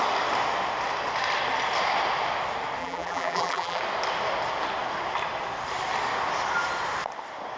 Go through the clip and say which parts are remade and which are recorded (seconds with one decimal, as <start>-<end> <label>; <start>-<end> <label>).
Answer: 0.0-2.8 recorded; 2.8-3.8 remade; 3.8-7.6 recorded